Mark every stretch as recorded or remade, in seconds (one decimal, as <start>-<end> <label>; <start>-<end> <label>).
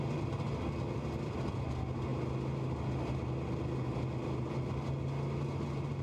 0.0-6.0 recorded